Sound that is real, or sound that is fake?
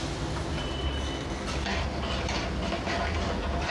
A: real